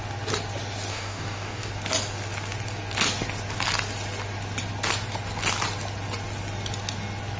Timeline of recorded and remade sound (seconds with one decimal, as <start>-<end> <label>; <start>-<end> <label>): 0.0-0.9 recorded; 0.9-1.7 remade; 1.7-7.4 recorded